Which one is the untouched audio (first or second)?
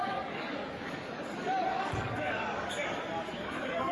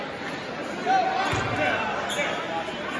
second